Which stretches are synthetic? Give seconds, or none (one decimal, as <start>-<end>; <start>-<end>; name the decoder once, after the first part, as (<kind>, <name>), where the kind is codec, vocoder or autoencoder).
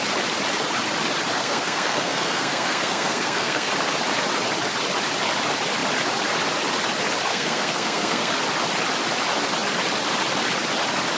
1.4-3.7 (codec, SNAC); 7.3-8.3